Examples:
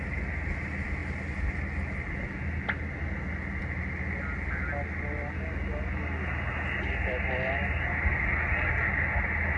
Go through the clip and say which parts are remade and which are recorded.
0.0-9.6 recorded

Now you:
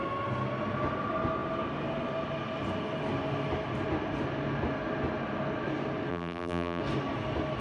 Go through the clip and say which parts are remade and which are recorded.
0.0-6.1 recorded; 6.1-6.8 remade; 6.8-7.6 recorded

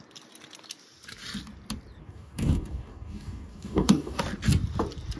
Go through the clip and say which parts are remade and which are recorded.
0.0-2.0 recorded; 2.0-4.2 remade; 4.2-5.2 recorded

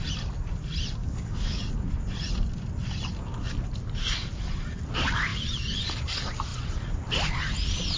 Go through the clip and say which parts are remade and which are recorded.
0.0-1.0 recorded; 1.0-1.7 remade; 1.7-8.0 recorded